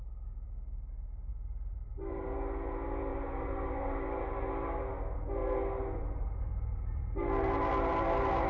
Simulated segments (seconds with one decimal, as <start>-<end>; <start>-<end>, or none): 1.3-2.3; 3.1-4.5; 5.4-8.5